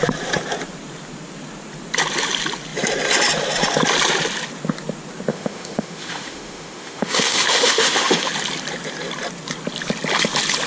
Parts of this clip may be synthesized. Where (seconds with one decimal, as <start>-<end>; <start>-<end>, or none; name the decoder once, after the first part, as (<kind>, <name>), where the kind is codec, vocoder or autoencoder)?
5.3-8.3 (autoencoder, DAC-VAE)

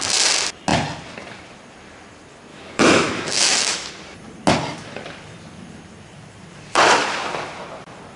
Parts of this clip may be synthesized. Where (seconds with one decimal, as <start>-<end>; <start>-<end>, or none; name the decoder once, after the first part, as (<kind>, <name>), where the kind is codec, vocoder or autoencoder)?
2.5-3.9 (autoencoder, DAC-VAE)

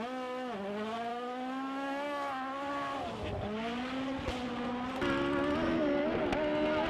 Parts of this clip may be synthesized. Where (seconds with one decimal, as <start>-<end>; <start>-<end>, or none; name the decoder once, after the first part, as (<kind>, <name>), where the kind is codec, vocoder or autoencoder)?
1.1-2.3 (autoencoder, DAC-VAE)

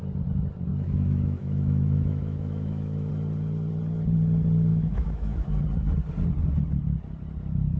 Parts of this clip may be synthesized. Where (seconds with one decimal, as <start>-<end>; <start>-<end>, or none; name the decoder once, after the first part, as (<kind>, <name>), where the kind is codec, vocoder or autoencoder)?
0.7-3.1 (autoencoder, DAC-VAE); 4.7-5.5

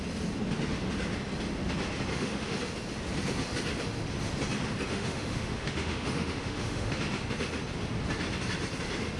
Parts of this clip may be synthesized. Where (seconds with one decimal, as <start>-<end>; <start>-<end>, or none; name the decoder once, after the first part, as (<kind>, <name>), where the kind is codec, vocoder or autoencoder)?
2.1-2.6 (autoencoder, DAC-VAE); 4.9-7.0

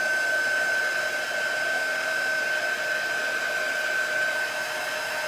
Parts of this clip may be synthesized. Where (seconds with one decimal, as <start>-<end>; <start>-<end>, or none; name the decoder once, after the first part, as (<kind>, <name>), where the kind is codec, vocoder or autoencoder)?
1.7-2.4 (autoencoder, DAC-VAE)

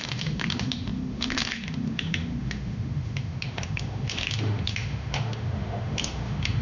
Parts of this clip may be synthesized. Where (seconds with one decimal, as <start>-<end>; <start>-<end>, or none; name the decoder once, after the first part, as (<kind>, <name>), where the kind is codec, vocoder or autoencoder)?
0.0-6.6 (autoencoder, DAC-VAE)